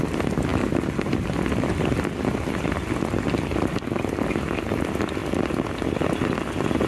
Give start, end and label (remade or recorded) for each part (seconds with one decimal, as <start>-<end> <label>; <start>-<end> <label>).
0.0-6.9 recorded